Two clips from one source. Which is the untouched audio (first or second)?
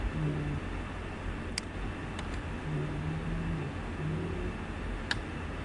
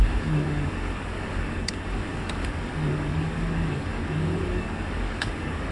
first